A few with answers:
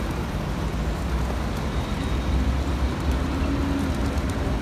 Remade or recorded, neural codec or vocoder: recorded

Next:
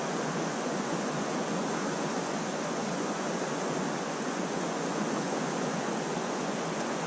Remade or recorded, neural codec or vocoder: remade, vocoder, Vocos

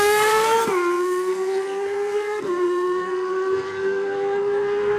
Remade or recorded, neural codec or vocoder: remade, codec, SNAC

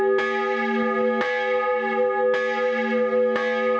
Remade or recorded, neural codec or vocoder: recorded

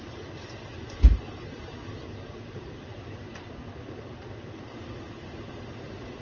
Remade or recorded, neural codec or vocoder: recorded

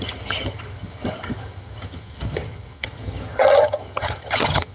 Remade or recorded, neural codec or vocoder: remade, vocoder, HiFi-GAN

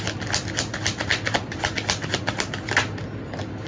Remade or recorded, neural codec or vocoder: recorded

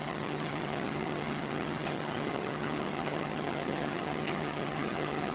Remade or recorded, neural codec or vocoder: remade, vocoder, HiFi-GAN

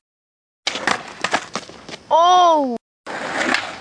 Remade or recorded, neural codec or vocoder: recorded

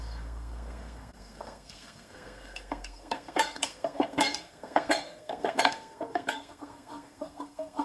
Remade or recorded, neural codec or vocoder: remade, codec, SNAC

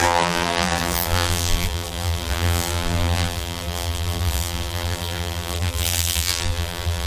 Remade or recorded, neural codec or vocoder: remade, vocoder, BigVGAN v2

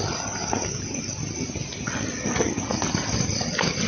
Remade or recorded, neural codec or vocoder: recorded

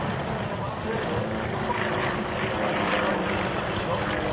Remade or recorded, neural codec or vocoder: recorded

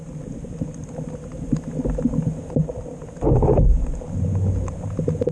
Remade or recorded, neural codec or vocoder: recorded